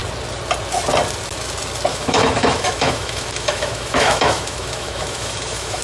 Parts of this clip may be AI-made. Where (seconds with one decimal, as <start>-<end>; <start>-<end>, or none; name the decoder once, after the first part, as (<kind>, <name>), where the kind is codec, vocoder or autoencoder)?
1.9-5.8 (autoencoder, DAC-VAE)